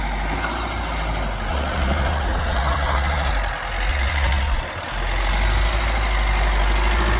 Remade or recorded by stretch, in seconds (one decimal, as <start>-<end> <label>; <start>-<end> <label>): 0.0-1.5 recorded; 1.5-3.3 remade; 3.3-3.9 recorded; 3.9-4.6 remade; 4.6-7.2 recorded